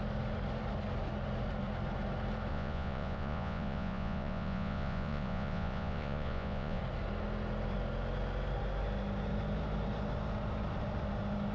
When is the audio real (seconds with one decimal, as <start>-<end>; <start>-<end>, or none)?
0.0-2.5; 6.8-11.5